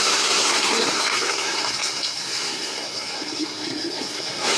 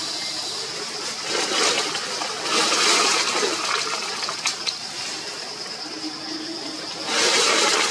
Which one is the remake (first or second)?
first